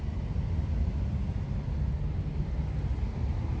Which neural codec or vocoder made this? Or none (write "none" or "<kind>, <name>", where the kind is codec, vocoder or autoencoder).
none